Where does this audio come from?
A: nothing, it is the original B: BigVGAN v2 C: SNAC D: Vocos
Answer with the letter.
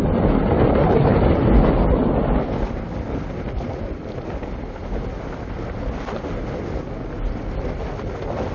A